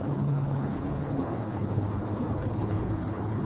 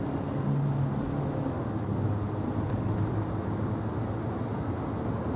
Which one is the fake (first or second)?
first